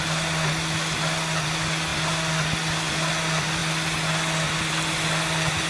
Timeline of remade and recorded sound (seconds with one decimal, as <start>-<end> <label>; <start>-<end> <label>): 0.0-5.7 recorded